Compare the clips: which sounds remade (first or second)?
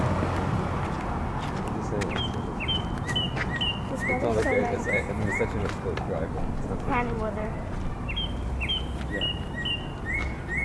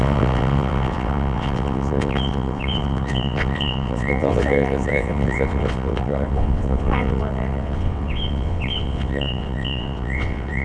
second